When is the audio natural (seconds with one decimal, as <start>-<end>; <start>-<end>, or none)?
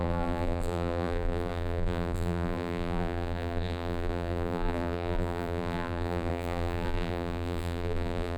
none